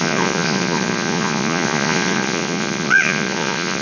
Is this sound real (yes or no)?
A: no